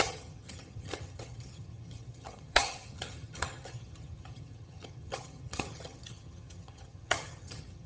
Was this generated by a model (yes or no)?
yes